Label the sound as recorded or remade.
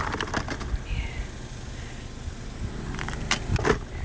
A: recorded